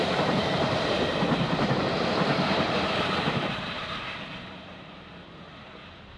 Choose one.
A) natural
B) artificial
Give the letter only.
B